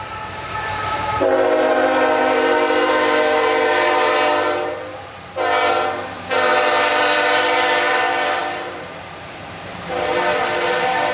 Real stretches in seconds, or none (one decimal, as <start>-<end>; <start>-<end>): 4.9-5.7